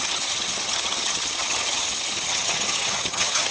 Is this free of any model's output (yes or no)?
no